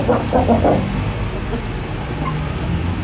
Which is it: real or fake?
real